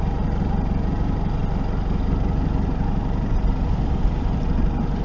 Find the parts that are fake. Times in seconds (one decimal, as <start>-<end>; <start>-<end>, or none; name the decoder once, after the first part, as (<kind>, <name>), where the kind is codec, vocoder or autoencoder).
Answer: none